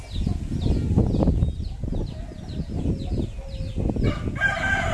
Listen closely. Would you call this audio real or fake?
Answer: real